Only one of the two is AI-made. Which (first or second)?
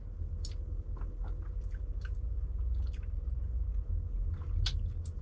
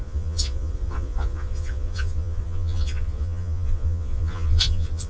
second